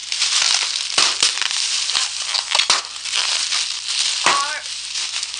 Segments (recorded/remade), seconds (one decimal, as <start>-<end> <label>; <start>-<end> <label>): 0.0-5.4 recorded

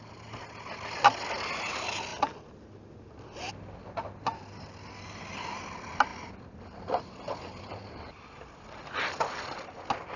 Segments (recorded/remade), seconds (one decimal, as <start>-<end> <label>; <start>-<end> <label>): 0.0-10.2 recorded

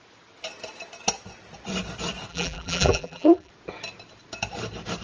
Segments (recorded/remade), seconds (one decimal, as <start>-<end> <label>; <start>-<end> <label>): 0.0-2.3 recorded; 2.3-3.5 remade; 3.5-5.0 recorded

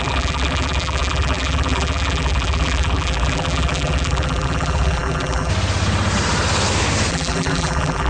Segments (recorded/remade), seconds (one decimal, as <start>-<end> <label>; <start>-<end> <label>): 0.0-5.5 remade; 5.5-7.1 recorded; 7.1-8.1 remade

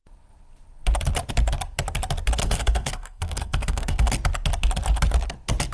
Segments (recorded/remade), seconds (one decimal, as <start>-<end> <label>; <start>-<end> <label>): 0.0-2.4 recorded; 2.4-4.1 remade; 4.1-5.7 recorded

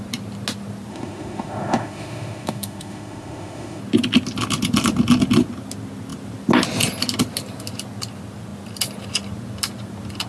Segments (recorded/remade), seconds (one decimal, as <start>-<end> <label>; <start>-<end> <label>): 0.0-0.9 recorded; 0.9-3.8 remade; 3.8-10.3 recorded